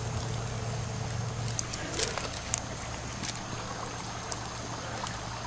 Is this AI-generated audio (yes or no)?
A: no